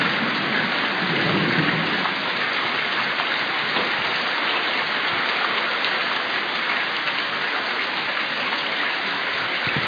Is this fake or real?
real